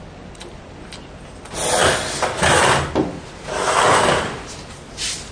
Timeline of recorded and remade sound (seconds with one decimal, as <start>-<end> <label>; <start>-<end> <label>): 0.0-5.3 recorded